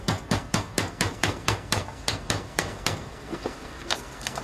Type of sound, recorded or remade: remade